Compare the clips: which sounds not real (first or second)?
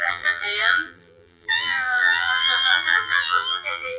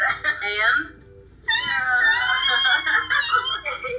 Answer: first